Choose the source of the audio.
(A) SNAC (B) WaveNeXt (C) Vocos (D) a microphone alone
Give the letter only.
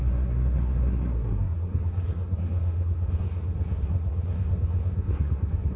A